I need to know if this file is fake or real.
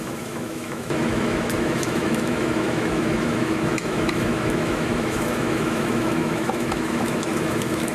fake